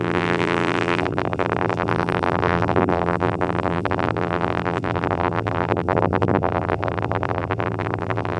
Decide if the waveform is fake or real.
fake